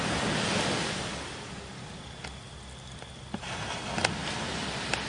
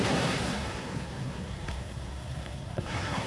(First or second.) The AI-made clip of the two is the second